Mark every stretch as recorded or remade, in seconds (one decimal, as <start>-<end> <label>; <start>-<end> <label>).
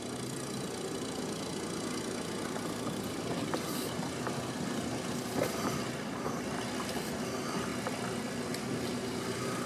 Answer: 0.0-9.7 recorded